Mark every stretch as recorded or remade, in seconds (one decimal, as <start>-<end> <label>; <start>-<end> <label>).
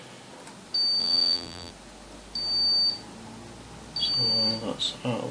0.0-1.0 recorded; 1.0-1.7 remade; 1.7-5.3 recorded